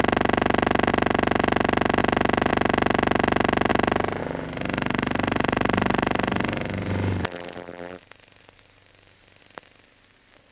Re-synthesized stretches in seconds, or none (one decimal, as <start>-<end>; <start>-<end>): 4.2-9.4